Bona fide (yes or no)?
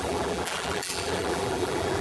no